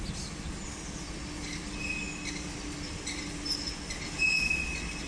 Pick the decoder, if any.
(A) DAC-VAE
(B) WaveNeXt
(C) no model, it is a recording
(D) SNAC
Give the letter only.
C